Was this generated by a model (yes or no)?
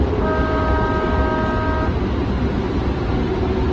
no